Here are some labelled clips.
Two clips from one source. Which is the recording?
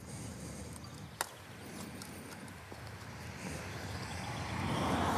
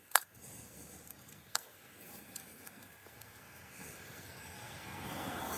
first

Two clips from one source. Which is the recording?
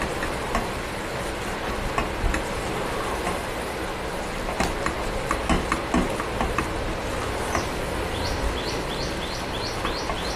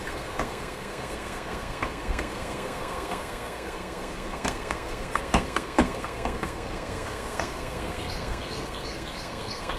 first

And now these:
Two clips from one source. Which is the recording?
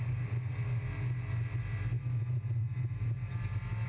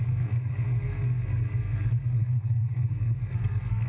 first